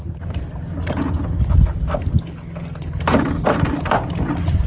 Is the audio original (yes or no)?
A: yes